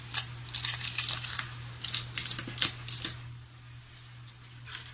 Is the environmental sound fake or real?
real